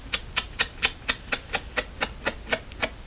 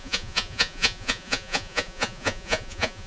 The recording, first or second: first